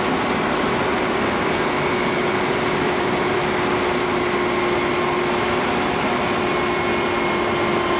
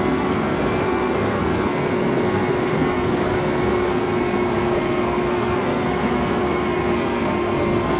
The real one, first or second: first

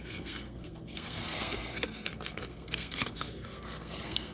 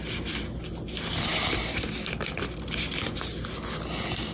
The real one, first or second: second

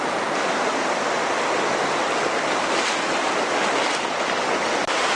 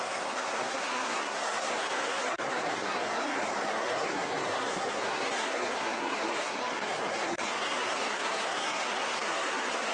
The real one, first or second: first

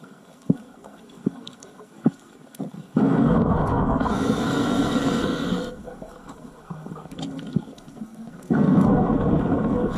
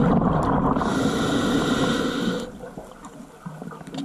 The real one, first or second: second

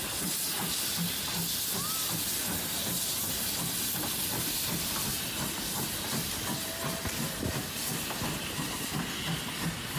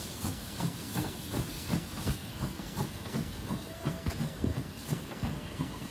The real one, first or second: first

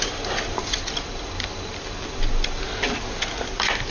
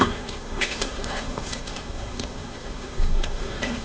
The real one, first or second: first